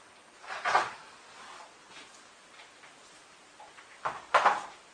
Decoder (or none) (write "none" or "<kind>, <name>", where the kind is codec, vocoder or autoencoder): none